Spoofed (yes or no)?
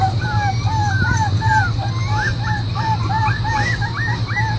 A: no